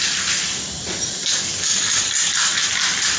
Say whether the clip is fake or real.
real